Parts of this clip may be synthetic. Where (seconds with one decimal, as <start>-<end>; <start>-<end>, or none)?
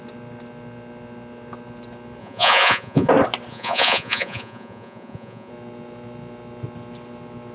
2.2-3.1; 3.5-5.5